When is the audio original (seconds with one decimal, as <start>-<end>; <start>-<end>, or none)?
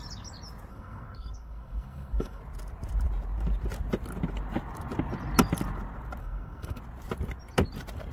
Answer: 0.0-0.7; 2.4-6.2; 6.8-8.1